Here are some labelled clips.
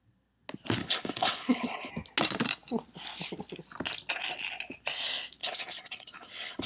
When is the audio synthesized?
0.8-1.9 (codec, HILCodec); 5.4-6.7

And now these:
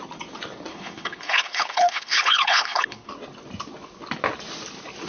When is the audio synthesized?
0.7-3.1 (codec, HILCodec)